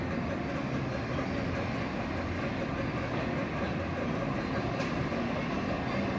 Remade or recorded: recorded